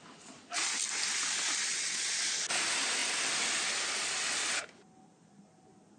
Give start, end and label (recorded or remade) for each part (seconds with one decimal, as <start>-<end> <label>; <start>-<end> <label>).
0.0-1.7 recorded; 1.7-2.2 remade; 2.2-6.0 recorded